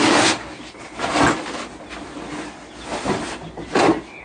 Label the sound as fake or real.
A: real